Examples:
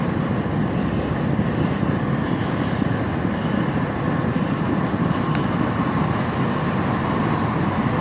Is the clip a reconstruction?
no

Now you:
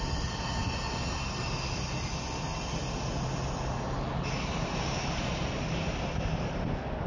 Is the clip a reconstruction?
no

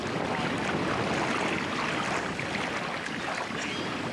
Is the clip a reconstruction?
no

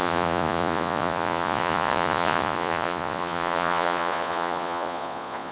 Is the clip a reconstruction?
yes